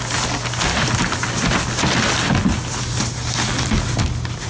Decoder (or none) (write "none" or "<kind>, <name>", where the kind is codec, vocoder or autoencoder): none